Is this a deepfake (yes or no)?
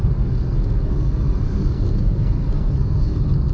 yes